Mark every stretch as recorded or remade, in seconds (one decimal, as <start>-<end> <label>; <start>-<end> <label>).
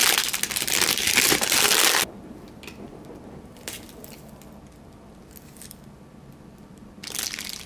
0.0-7.7 recorded